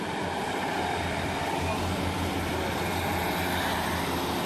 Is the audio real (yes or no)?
yes